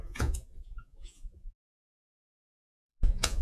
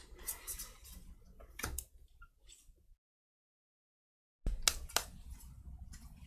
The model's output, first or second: first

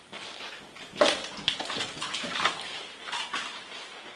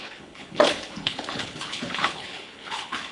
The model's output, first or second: second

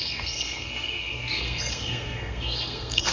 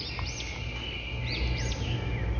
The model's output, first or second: first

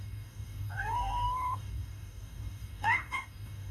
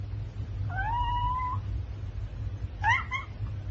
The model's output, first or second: first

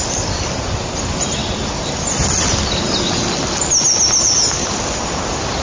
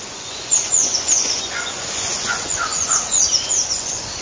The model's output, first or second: second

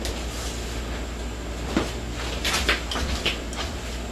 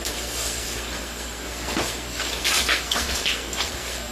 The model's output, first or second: second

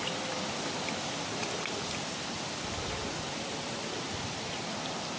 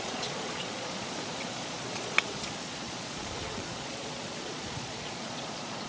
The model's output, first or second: second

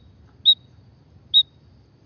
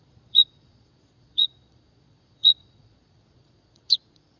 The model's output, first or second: second